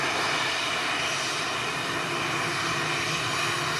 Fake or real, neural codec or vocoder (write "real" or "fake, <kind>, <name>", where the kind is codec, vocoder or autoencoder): real